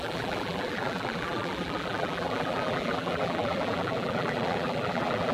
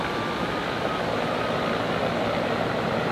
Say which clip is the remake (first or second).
first